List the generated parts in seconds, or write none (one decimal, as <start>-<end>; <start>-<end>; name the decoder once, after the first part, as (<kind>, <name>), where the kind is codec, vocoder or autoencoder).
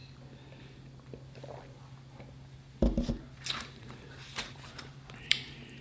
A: 3.5-5.8 (vocoder, BigVGAN v2)